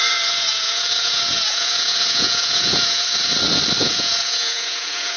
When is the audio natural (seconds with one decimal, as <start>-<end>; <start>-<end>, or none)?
3.3-3.8